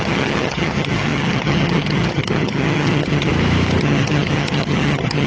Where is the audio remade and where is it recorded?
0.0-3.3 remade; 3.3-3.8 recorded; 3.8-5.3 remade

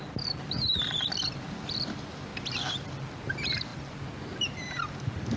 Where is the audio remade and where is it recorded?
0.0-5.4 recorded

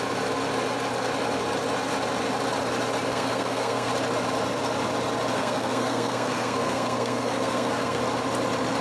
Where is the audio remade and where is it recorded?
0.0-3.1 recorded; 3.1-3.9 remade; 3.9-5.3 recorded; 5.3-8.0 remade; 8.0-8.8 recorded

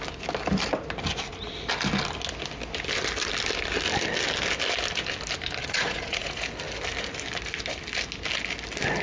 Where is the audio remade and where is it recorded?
0.0-5.6 recorded; 5.6-6.4 remade; 6.4-9.0 recorded

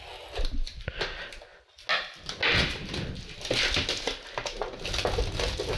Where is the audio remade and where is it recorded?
0.0-5.8 recorded

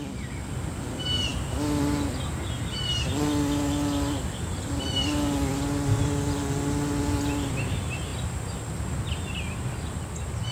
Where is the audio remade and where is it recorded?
0.0-10.5 recorded

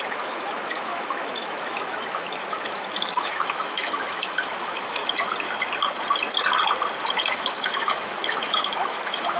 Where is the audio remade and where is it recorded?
0.0-5.0 remade; 5.0-7.3 recorded; 7.3-9.4 remade